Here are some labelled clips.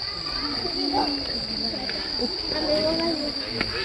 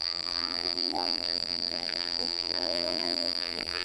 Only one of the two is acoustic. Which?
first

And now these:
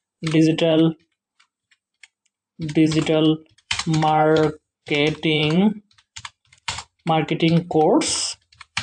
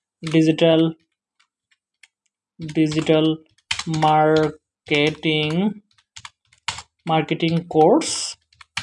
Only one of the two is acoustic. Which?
second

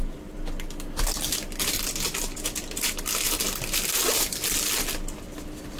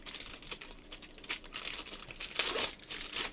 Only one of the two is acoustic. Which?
first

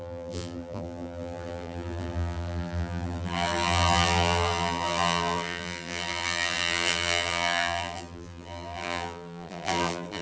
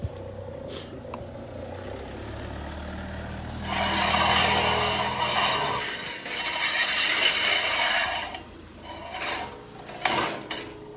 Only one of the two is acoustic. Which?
second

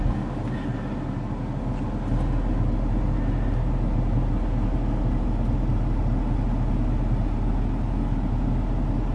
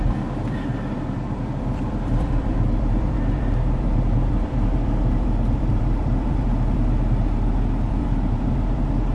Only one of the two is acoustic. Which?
first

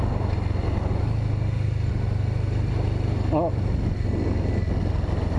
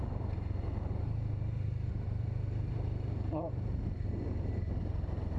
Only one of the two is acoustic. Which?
first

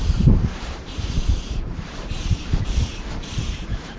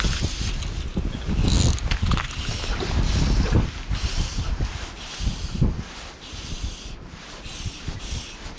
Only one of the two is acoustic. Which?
second